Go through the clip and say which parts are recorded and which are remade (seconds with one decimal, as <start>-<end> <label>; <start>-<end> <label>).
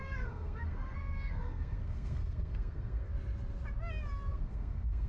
0.0-3.1 remade; 3.1-4.3 recorded; 4.3-5.1 remade